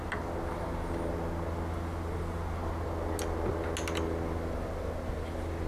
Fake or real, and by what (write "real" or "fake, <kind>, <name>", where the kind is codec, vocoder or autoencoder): real